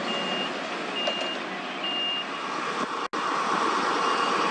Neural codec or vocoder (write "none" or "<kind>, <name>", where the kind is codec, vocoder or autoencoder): none